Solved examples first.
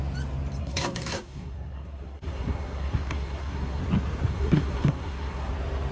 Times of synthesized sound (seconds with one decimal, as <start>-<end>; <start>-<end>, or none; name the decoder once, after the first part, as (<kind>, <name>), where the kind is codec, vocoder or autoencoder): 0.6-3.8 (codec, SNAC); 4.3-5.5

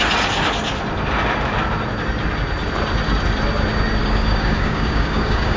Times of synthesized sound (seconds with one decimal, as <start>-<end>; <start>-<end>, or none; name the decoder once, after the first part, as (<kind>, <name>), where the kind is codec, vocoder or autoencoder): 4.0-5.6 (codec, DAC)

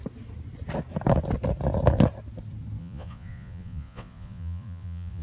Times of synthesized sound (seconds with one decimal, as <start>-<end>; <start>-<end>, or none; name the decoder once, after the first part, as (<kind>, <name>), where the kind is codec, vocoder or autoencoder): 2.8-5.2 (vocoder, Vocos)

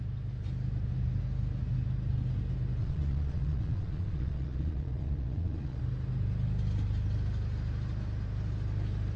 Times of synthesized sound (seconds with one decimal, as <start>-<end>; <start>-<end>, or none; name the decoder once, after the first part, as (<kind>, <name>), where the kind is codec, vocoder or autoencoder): 2.8-5.8 (vocoder, Vocos)

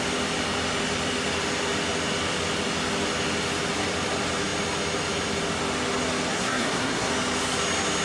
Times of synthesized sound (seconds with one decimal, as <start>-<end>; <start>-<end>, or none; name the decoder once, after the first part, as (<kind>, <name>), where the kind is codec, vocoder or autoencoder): 6.3-7.1 (codec, SNAC)

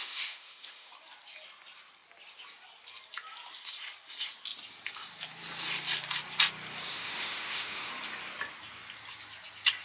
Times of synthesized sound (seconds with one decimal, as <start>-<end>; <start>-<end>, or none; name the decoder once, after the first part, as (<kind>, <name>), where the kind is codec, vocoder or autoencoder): 0.0-0.9 (autoencoder, DAC-VAE); 6.9-7.9